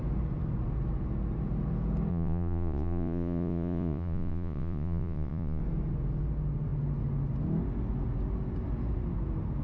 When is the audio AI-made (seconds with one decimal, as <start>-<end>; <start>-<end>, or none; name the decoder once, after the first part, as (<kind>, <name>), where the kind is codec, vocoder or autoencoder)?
2.1-5.6 (vocoder, Vocos)